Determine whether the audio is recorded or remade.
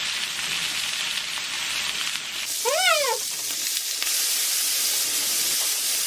remade